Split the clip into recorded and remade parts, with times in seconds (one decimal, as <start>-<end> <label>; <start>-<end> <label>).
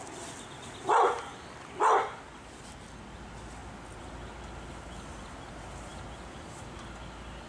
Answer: 0.0-7.5 recorded